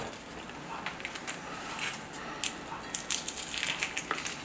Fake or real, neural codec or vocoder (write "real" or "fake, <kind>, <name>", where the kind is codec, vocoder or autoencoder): real